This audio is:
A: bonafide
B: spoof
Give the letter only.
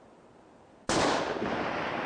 A